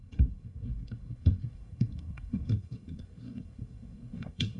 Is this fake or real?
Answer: fake